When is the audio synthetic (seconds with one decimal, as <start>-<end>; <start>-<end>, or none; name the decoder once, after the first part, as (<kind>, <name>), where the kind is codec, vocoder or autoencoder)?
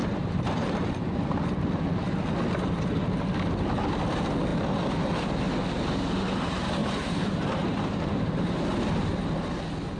0.0-1.2 (vocoder, BigVGAN v2); 6.8-8.6